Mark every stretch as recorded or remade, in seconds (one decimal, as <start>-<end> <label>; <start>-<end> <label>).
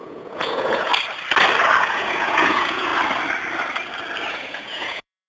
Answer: 0.0-0.9 remade; 0.9-1.8 recorded; 1.8-2.9 remade; 2.9-4.3 recorded; 4.3-5.3 remade